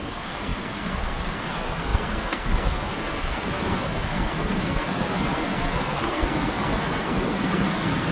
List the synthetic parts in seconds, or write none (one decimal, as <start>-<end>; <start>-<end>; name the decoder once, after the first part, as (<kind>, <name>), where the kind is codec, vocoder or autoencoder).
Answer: 0.0-8.1 (codec, SNAC)